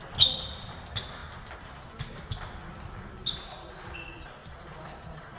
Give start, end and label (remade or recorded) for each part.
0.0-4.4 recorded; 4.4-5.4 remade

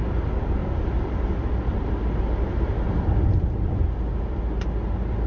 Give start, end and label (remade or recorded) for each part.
0.0-0.6 recorded; 0.6-3.8 remade; 3.8-5.3 recorded

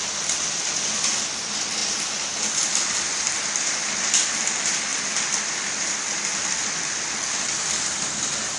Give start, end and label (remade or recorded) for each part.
0.0-8.6 remade

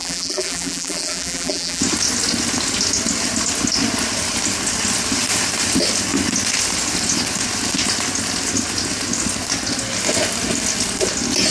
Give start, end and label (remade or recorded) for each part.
0.0-1.8 remade; 1.8-11.5 recorded

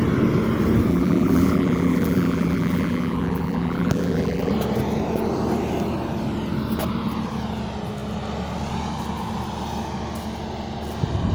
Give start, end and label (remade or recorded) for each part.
0.0-0.9 recorded; 0.9-4.5 remade; 4.5-11.3 recorded

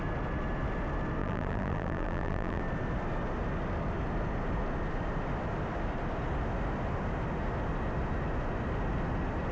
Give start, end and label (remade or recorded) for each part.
0.0-1.2 recorded; 1.2-2.6 remade; 2.6-9.5 recorded